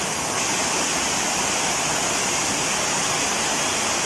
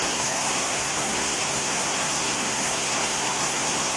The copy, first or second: second